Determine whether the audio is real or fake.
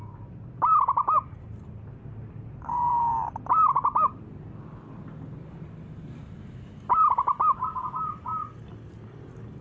real